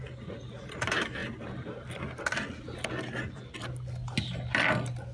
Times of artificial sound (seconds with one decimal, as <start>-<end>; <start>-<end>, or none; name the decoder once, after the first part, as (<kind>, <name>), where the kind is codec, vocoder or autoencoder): none